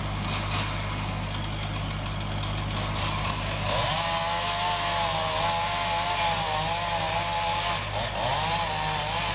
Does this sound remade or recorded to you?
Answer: recorded